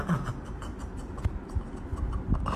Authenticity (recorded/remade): recorded